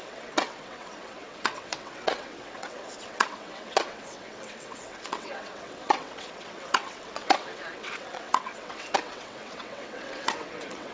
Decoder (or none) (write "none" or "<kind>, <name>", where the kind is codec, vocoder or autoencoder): vocoder, WaveNeXt